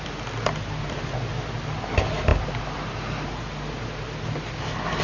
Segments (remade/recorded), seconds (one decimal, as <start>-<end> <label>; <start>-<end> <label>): 0.0-5.0 recorded